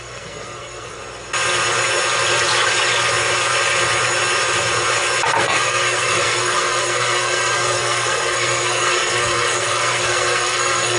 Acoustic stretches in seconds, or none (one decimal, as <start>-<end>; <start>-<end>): 1.0-5.2